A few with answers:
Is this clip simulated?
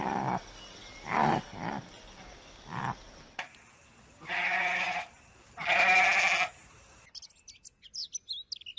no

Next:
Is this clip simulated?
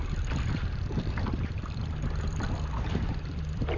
yes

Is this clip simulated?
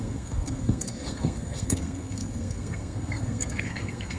yes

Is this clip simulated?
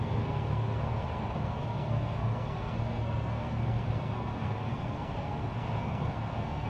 yes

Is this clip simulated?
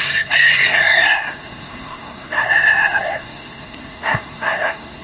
yes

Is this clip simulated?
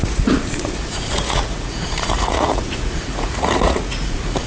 yes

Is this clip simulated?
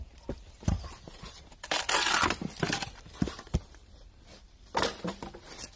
yes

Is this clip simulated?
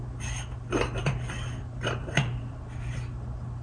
no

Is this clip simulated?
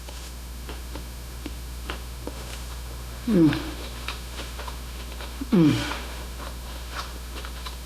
yes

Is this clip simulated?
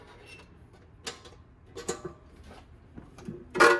no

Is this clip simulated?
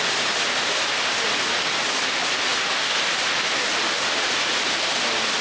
no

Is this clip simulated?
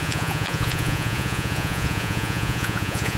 yes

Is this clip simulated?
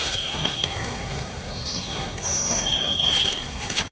yes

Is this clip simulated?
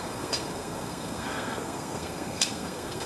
yes